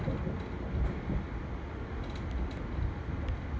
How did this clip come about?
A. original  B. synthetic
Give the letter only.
A